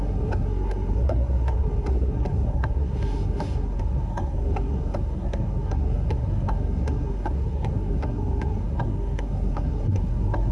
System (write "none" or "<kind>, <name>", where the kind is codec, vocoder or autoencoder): codec, SNAC